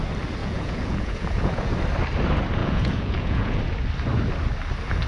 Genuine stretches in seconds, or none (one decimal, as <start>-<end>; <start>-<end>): 0.0-0.4; 1.7-2.6; 3.6-5.1